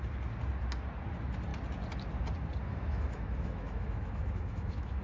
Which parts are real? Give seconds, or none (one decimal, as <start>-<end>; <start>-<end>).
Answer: 0.0-2.6